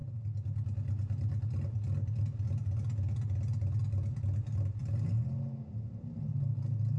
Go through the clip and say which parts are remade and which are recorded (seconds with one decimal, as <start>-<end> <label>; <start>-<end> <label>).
0.0-7.0 recorded